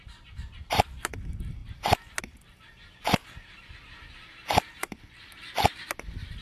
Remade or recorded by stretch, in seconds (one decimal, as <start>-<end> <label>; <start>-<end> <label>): 0.0-6.4 recorded